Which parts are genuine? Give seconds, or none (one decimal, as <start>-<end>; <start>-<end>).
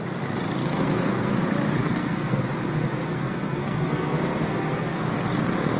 0.0-0.6; 1.3-1.8; 2.4-3.0; 5.1-5.8